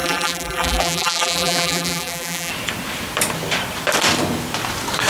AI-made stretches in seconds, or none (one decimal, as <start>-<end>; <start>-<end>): 0.0-2.5